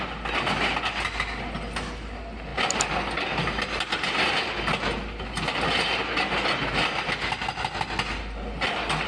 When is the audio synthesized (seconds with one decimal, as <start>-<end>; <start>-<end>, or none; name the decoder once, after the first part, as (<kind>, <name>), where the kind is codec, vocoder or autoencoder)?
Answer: none